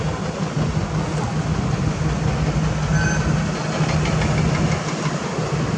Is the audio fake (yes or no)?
no